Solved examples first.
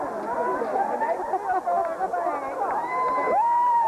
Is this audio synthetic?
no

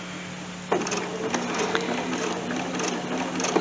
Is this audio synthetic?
no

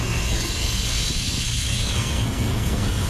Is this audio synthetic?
yes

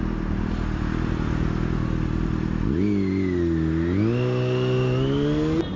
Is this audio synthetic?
no